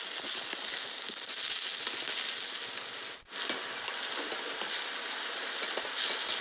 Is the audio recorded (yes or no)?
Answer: yes